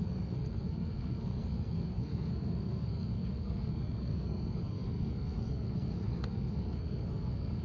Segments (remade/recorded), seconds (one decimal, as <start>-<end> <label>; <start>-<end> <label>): 0.0-7.6 remade